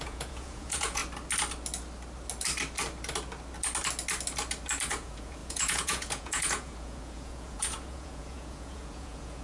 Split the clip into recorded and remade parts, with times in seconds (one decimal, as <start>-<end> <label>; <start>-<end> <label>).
0.0-1.0 remade; 1.0-4.9 recorded; 4.9-9.4 remade